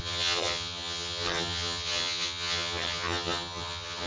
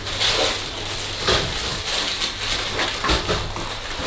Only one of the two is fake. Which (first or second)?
first